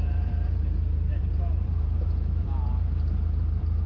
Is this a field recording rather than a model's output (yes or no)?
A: no